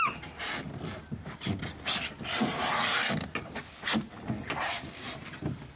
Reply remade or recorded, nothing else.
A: recorded